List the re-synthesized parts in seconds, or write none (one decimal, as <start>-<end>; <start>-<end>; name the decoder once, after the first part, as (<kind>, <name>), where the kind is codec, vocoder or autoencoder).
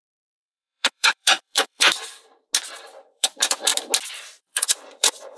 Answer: 0.0-1.9 (vocoder, Vocos); 3.0-3.7; 4.4-5.4